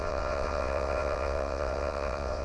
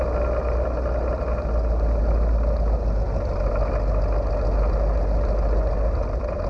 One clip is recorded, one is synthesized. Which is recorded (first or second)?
second